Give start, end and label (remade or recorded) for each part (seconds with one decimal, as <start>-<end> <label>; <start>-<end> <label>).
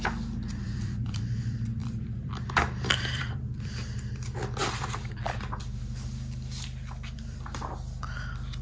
0.0-8.6 remade